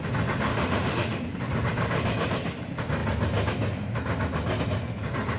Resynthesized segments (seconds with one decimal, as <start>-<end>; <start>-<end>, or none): 0.5-1.2